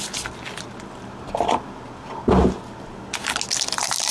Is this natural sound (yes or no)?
yes